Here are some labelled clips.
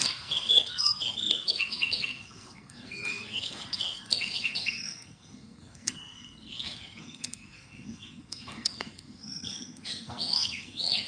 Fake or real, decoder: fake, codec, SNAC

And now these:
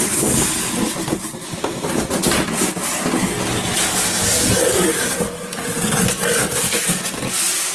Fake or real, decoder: real